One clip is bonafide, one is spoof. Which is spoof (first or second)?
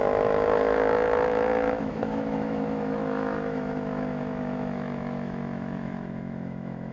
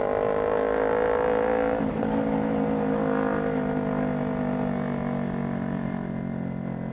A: first